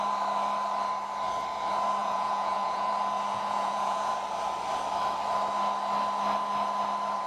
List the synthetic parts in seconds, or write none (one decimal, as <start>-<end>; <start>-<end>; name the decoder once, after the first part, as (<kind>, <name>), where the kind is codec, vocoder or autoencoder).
2.0-2.9 (vocoder, Vocos); 3.3-4.1

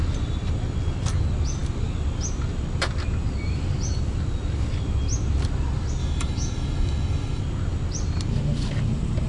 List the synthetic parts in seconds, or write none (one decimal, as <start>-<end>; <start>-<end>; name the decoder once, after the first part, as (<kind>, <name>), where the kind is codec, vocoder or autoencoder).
6.0-7.4 (autoencoder, DAC-VAE)

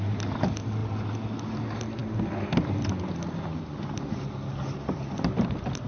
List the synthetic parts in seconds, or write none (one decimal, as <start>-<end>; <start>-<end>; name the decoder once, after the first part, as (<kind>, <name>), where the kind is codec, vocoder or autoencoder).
none

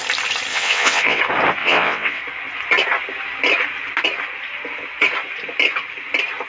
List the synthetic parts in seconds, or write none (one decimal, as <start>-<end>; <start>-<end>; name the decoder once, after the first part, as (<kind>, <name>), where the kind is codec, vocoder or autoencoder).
0.5-1.2 (vocoder, WaveNeXt); 1.6-2.2

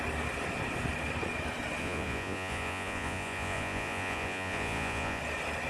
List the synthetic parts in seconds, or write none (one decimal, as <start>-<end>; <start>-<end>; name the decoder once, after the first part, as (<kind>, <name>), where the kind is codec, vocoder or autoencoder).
1.8-5.2 (vocoder, Vocos)

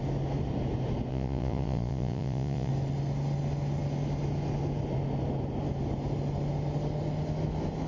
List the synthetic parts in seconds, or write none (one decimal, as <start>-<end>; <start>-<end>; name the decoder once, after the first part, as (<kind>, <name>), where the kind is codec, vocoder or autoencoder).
1.1-2.7 (vocoder, Vocos)

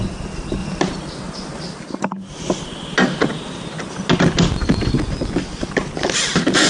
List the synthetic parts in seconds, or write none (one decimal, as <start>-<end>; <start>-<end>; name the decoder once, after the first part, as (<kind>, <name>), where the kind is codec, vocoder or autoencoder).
0.6-4.1 (vocoder, BigVGAN v2); 4.6-5.9